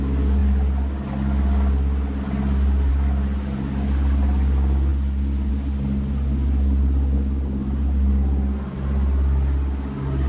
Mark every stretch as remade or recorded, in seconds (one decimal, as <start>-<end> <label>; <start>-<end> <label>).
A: 0.0-10.3 recorded